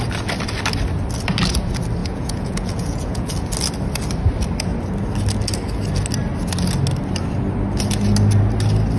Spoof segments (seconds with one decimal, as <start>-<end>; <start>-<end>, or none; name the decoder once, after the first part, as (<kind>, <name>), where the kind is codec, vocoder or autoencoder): 2.0-3.3 (vocoder, Vocos)